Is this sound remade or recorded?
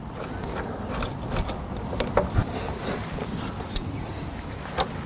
recorded